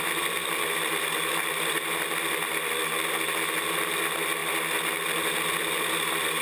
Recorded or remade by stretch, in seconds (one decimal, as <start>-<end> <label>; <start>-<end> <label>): 0.0-6.4 recorded